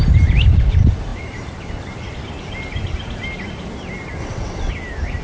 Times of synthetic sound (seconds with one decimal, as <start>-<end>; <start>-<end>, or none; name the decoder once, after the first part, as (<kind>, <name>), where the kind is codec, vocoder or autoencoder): 4.2-4.7 (vocoder, WaveNeXt)